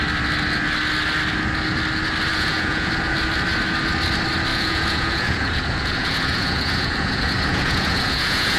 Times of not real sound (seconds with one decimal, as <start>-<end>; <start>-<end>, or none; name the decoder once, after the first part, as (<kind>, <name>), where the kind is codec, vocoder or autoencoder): 2.3-2.9 (vocoder, Vocos); 4.5-8.6